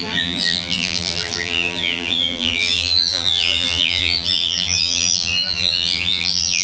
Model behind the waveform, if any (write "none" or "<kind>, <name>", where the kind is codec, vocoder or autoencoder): vocoder, BigVGAN v2